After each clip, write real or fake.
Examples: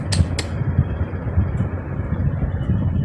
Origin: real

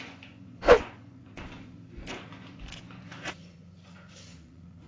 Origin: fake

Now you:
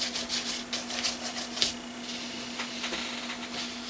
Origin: real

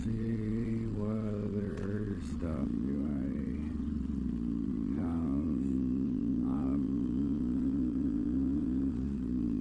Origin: fake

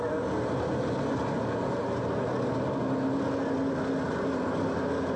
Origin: real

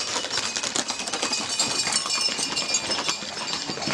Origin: real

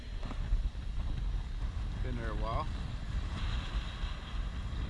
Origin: real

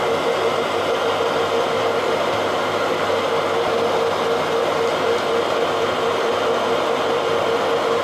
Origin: real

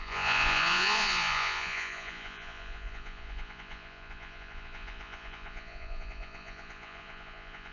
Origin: fake